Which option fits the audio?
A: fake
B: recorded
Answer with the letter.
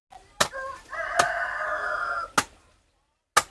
B